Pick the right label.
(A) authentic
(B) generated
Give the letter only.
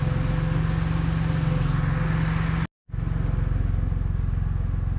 A